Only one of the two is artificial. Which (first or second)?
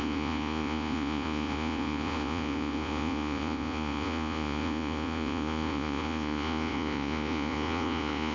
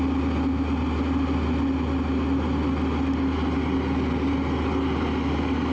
first